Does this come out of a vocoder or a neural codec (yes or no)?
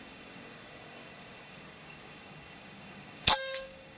yes